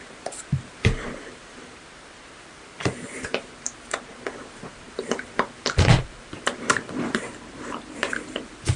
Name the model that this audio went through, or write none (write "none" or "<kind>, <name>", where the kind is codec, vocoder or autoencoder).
vocoder, BigVGAN v2